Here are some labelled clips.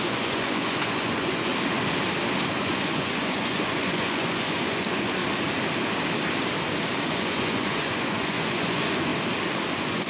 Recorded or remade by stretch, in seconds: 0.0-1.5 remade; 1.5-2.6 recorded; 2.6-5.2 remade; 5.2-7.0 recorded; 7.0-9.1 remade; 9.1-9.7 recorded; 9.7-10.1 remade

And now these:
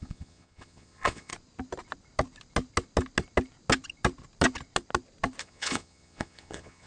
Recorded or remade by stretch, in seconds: 0.0-1.3 remade; 1.3-5.4 recorded; 5.4-6.9 remade

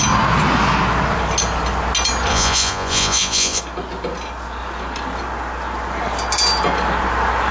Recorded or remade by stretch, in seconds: 0.0-2.3 recorded; 2.3-3.6 remade; 3.6-7.5 recorded

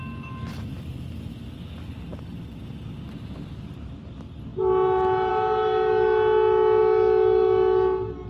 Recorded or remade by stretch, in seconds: 0.0-4.5 recorded; 4.5-5.3 remade; 5.3-8.3 recorded

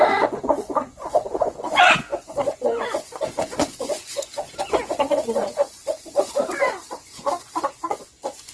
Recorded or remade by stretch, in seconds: 0.0-8.5 remade

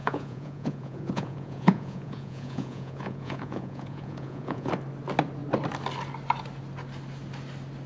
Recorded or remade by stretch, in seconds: 0.0-4.7 remade; 4.7-7.9 recorded